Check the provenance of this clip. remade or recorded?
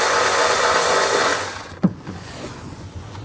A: remade